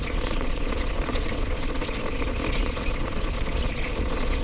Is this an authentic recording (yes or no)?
no